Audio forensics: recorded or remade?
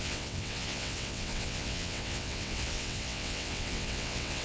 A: remade